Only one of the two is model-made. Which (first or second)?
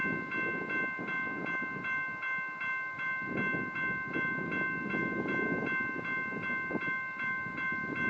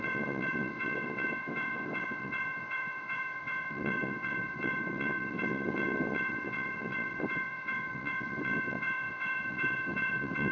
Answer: second